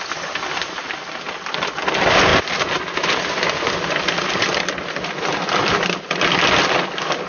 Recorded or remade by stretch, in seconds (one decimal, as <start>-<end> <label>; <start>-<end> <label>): 0.0-7.3 recorded